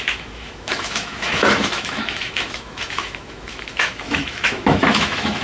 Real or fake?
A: fake